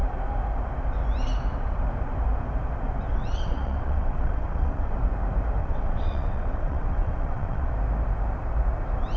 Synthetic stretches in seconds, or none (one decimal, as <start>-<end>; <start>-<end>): 3.1-4.9; 5.6-7.7